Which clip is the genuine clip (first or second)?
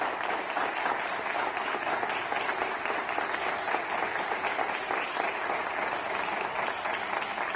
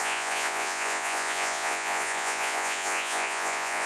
first